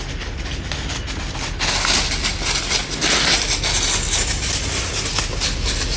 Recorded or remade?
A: recorded